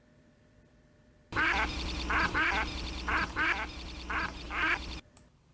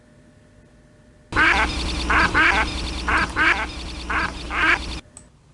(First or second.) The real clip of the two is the second